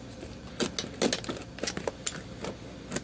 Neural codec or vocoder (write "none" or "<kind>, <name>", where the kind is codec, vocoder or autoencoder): none